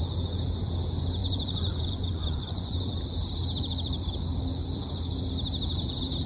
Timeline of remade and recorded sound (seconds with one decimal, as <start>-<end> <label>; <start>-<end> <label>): 0.0-1.2 recorded; 1.2-3.0 remade; 3.0-6.3 recorded